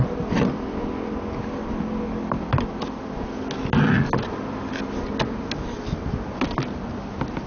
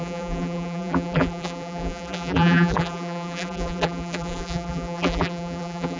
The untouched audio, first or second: first